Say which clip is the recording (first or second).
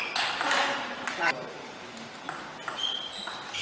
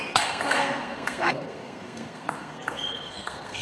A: first